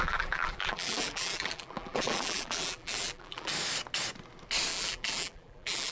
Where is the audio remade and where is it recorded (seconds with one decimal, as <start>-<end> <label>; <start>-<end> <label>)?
0.0-3.5 remade; 3.5-4.7 recorded; 4.7-5.9 remade